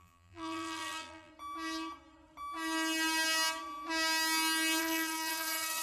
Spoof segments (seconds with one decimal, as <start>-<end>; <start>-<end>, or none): 0.0-1.3; 4.8-5.8